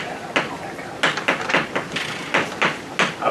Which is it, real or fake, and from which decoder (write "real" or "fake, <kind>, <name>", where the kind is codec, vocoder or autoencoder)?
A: real